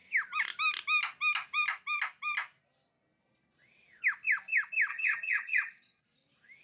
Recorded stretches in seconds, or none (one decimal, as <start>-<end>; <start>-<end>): 0.0-4.9; 6.0-6.6